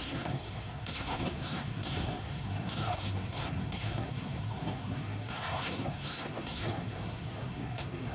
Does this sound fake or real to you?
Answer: fake